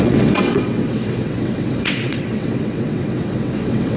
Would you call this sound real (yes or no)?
no